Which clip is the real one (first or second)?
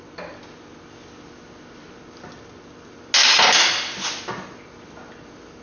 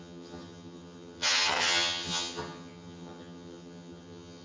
first